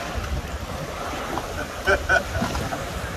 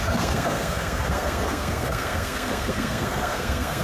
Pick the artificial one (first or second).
second